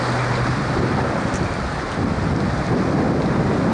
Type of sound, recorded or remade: recorded